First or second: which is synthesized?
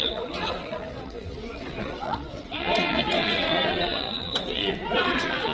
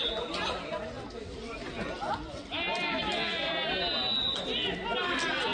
first